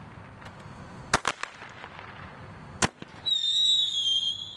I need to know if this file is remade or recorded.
recorded